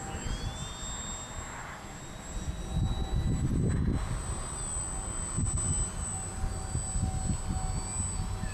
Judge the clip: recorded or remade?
recorded